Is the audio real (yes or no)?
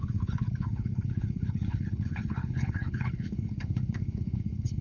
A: no